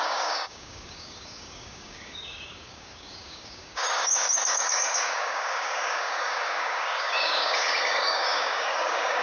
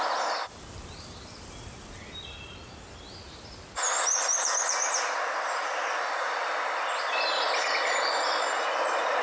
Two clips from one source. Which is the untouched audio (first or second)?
second